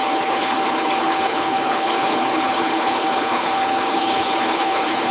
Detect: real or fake fake